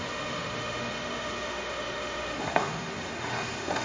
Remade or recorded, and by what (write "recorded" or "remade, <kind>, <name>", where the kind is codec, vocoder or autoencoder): remade, autoencoder, DAC-VAE